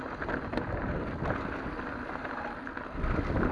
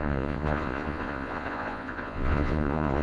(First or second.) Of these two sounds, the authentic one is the first